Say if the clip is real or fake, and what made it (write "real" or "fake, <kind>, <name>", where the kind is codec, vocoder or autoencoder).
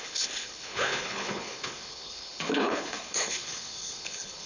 fake, codec, HILCodec